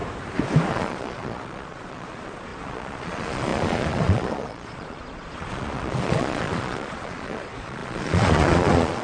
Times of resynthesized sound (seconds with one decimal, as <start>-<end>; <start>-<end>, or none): 0.7-9.0